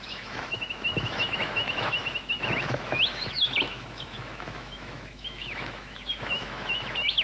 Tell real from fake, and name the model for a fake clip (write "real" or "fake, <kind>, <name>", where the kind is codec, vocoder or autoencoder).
fake, autoencoder, DAC-VAE